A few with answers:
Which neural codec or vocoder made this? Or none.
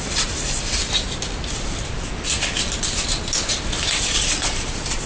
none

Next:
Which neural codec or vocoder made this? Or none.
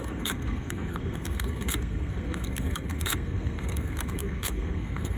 codec, SNAC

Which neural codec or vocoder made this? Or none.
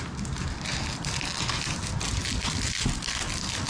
none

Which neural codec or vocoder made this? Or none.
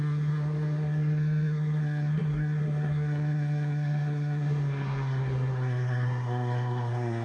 codec, SNAC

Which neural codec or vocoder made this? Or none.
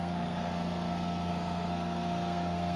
codec, SNAC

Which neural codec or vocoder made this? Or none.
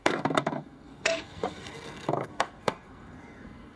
codec, SNAC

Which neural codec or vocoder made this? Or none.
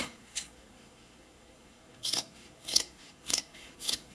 codec, SNAC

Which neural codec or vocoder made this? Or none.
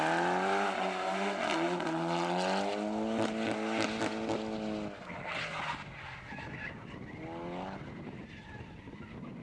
none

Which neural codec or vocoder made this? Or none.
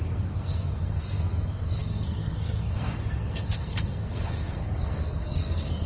codec, SNAC